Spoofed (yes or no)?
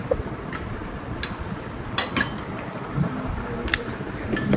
no